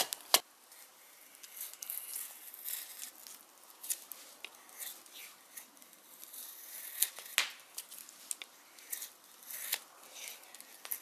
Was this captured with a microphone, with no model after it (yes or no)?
yes